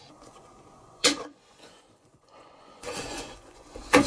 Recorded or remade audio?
remade